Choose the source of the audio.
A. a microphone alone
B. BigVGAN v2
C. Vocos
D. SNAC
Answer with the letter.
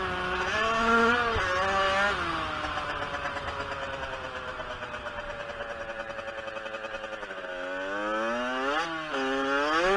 A